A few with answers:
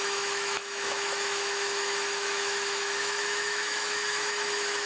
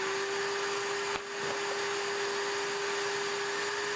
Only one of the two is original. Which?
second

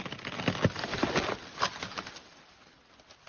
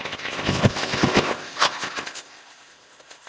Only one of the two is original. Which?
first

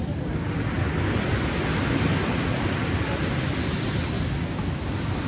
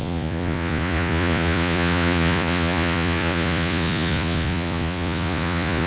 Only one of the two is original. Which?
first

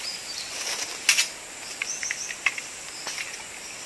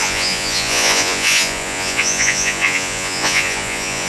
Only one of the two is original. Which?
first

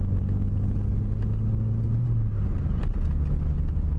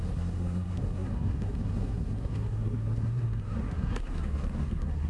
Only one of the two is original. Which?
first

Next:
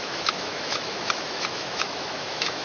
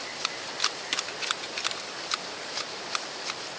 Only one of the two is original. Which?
second